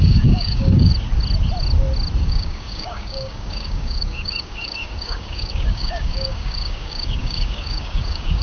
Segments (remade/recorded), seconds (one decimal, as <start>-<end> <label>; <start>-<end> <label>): 0.0-0.9 remade; 0.9-2.2 recorded; 2.2-8.4 remade